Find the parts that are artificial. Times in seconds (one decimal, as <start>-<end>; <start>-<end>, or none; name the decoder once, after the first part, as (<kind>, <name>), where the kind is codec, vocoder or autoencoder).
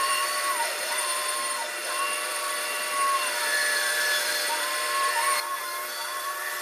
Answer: 0.0-6.6 (vocoder, BigVGAN v2)